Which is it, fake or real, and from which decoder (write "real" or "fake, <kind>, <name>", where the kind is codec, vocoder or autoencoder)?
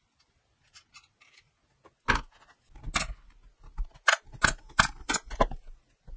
real